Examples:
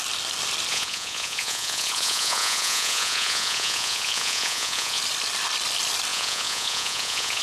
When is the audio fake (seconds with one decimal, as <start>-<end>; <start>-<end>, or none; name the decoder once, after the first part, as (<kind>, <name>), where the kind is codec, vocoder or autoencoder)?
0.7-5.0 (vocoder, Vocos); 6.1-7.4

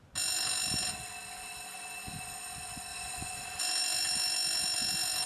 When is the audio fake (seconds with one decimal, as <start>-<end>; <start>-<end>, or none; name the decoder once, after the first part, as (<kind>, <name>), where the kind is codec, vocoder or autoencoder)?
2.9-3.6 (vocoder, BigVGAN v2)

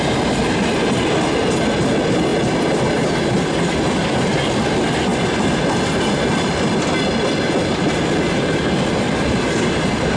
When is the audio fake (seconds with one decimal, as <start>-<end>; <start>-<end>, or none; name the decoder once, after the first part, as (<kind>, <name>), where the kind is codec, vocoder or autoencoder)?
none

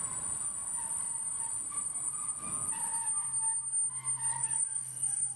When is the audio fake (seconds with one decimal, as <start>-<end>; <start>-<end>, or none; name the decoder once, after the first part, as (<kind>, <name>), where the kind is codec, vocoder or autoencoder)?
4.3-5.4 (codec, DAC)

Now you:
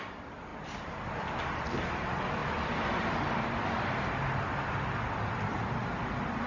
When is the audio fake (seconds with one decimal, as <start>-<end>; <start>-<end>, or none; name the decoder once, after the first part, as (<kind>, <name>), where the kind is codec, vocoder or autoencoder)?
0.0-0.5 (vocoder, BigVGAN v2); 1.7-6.5

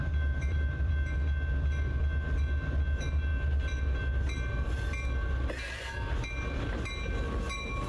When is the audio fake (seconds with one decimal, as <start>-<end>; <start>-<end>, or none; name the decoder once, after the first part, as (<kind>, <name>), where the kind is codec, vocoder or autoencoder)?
0.0-0.9 (vocoder, BigVGAN v2)

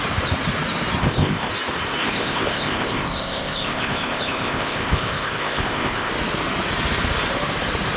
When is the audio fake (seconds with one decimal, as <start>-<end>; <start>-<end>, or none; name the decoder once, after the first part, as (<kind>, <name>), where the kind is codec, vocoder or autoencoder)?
1.0-1.5 (codec, ZipCodec); 2.0-6.1

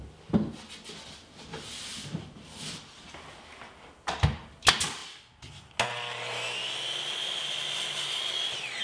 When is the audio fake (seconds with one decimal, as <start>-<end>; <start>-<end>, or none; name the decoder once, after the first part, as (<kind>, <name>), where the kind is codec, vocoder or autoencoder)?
none